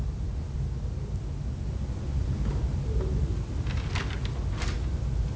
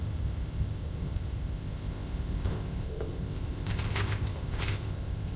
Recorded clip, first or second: first